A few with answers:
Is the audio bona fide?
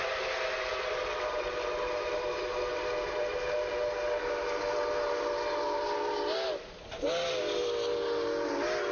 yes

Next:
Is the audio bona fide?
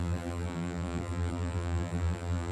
no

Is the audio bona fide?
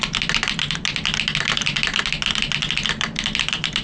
yes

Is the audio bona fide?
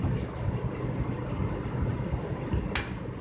yes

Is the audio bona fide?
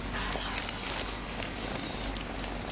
yes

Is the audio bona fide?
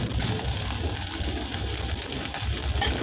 yes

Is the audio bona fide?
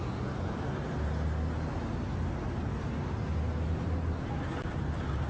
yes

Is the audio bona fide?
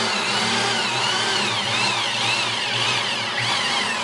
yes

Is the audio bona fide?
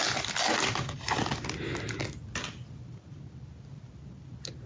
yes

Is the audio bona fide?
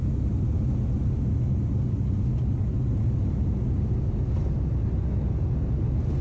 yes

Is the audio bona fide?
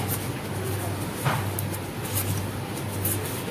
yes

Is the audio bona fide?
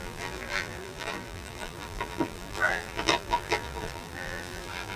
no